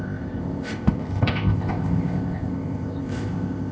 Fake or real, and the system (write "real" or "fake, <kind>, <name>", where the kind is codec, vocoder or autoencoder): fake, codec, ZipCodec